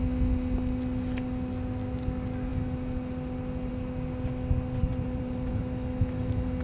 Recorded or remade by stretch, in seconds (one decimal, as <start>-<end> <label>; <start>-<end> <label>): 0.0-4.8 recorded; 4.8-5.6 remade; 5.6-6.6 recorded